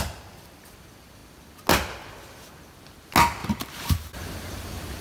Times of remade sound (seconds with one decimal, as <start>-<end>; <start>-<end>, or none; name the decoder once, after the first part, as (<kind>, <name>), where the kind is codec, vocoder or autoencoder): 3.4-4.1 (vocoder, BigVGAN v2)